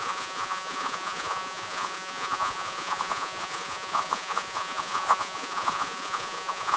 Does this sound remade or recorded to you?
remade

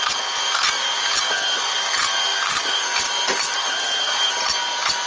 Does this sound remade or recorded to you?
recorded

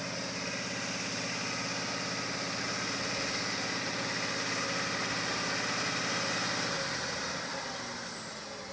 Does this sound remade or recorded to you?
recorded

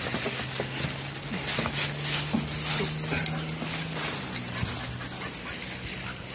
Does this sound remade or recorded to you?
recorded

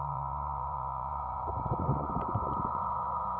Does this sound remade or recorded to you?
remade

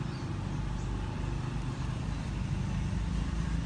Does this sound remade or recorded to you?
recorded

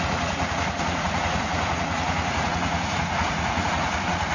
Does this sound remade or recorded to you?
remade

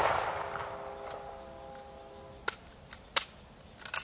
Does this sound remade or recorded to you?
recorded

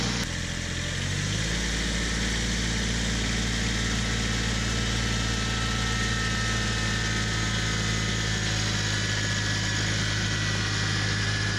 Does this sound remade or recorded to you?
recorded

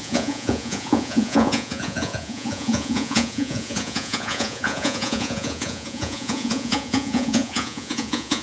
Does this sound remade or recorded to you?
remade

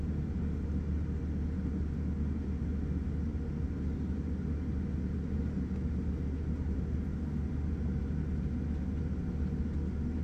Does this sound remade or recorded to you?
recorded